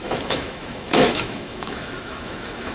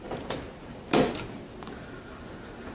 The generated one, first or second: first